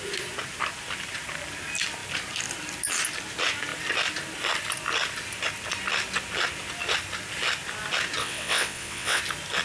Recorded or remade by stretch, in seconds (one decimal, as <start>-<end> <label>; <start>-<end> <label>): 0.0-8.2 recorded; 8.2-9.2 remade; 9.2-9.6 recorded